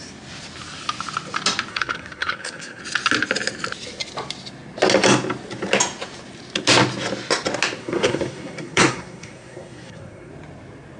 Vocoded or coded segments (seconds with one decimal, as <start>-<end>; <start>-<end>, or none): 1.7-2.8; 7.8-10.3